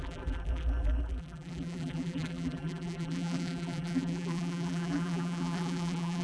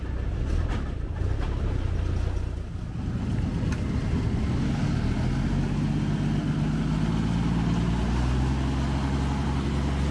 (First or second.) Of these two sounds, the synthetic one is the first